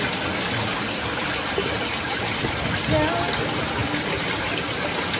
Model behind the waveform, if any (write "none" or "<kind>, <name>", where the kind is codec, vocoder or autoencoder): none